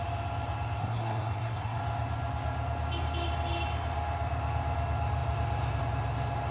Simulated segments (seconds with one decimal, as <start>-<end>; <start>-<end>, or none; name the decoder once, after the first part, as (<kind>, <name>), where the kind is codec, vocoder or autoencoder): 0.8-1.8 (codec, SNAC)